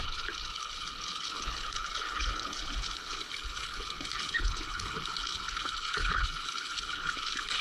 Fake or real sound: fake